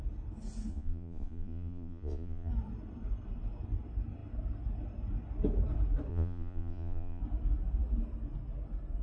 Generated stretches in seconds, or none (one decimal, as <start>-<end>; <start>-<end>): 0.7-2.5; 6.1-7.2